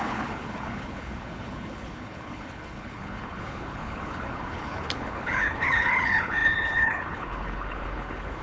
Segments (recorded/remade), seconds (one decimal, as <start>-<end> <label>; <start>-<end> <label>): 0.0-8.4 remade